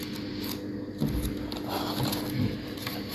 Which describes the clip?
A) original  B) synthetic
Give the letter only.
A